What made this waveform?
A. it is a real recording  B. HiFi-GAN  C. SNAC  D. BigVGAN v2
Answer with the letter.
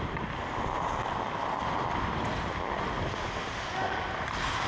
A